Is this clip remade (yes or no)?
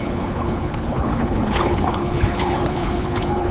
yes